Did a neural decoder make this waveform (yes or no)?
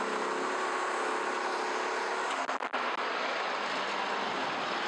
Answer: no